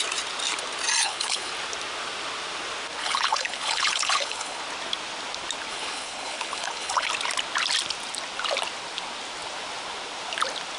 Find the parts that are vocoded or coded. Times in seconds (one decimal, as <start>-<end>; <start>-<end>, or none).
1.0-1.5; 3.0-4.6; 5.7-7.1

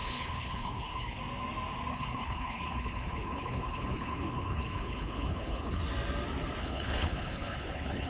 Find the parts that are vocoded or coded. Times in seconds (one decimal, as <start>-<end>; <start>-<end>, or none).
0.0-1.2; 1.9-5.8; 6.6-8.1

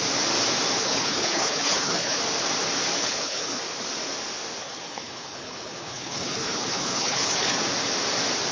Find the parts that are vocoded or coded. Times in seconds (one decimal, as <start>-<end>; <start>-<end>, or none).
0.8-2.2; 3.0-3.6; 4.6-7.6

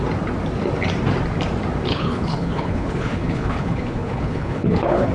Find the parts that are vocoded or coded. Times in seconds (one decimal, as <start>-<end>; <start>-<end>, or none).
1.9-5.1

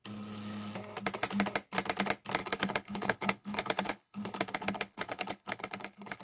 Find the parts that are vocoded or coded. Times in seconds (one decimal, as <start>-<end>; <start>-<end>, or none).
2.4-6.2

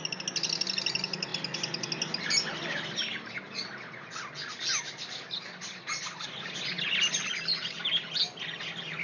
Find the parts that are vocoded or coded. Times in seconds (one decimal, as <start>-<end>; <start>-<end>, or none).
none

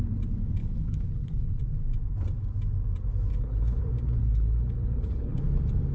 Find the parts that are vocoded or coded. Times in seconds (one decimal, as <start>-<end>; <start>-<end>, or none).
0.6-1.6; 3.3-3.8; 4.2-5.4